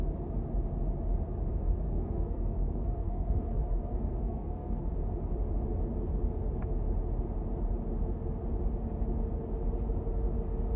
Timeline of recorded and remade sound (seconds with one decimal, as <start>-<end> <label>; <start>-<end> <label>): 0.0-1.5 recorded; 1.5-4.9 remade; 4.9-10.8 recorded